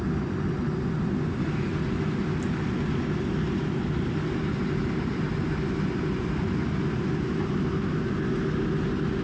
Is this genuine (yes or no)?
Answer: yes